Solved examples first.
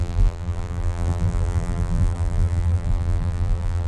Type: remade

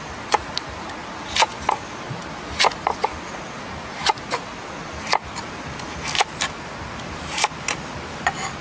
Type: recorded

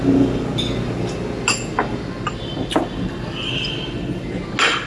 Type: recorded